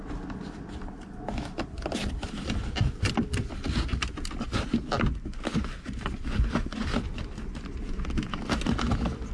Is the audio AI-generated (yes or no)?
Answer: no